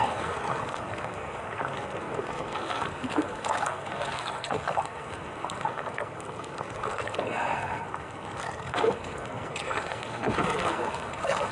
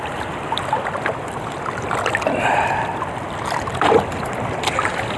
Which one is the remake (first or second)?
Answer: first